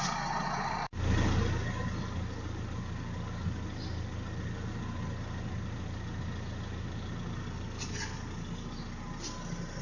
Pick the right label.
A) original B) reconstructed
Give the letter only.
A